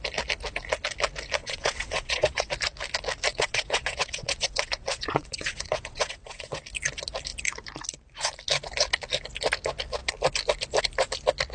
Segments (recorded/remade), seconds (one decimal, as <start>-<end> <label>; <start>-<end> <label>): 0.0-1.4 recorded; 1.4-2.5 remade; 2.5-3.3 recorded; 3.3-6.6 remade; 6.6-11.5 recorded

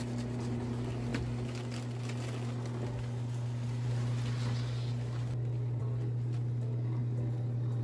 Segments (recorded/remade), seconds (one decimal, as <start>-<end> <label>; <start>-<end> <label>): 0.0-7.8 recorded

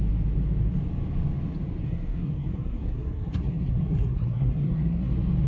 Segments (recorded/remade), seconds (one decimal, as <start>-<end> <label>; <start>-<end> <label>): 0.0-1.8 recorded; 1.8-5.1 remade; 5.1-5.5 recorded

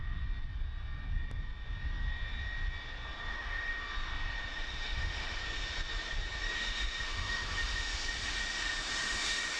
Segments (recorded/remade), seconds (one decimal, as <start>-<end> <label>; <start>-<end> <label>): 0.0-3.3 recorded; 3.3-3.8 remade; 3.8-4.5 recorded; 4.5-5.4 remade; 5.4-6.6 recorded; 6.6-9.6 remade

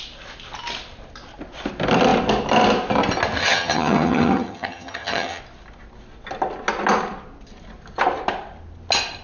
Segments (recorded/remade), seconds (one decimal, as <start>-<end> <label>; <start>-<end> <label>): 0.0-3.4 recorded; 3.4-5.4 remade; 5.4-9.2 recorded